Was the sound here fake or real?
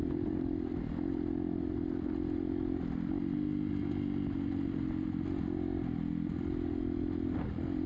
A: real